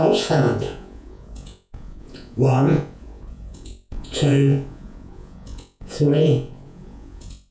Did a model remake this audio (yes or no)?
yes